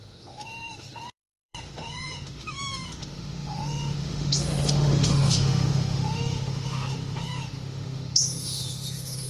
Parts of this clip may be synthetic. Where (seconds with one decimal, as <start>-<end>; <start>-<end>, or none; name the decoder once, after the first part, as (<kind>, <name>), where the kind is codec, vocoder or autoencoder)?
0.0-9.3 (autoencoder, DAC-VAE)